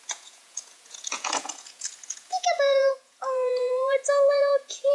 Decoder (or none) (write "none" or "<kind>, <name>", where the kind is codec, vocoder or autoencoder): vocoder, Vocos